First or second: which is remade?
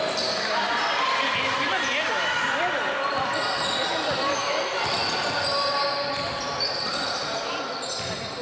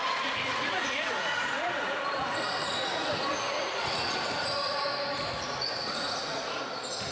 second